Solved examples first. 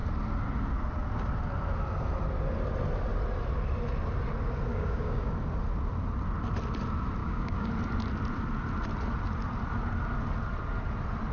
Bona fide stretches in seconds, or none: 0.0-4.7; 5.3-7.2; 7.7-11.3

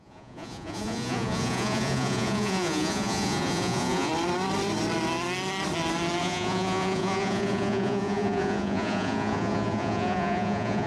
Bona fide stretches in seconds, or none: 4.1-6.2

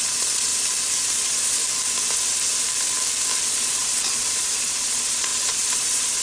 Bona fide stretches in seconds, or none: 0.5-1.1; 1.6-3.4